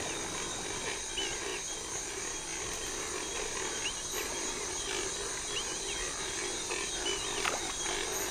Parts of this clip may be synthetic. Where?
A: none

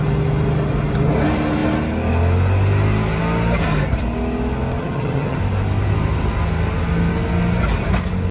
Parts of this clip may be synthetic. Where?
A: 4.8-5.4 (vocoder, HiFi-GAN)

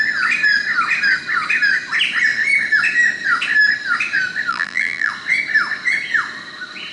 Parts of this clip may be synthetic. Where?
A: 4.5-5.1 (vocoder, BigVGAN v2)

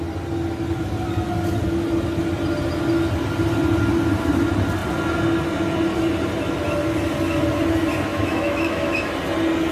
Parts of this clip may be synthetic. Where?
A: 8.1-9.1 (autoencoder, DAC-VAE)